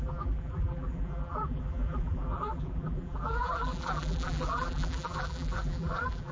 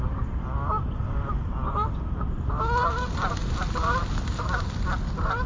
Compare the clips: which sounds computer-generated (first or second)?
first